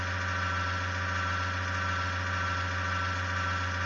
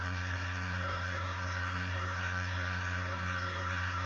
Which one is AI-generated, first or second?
second